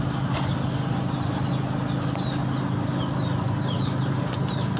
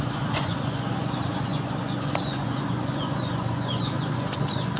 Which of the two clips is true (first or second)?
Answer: first